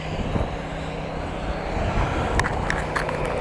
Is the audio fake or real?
real